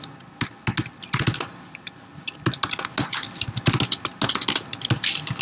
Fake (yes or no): no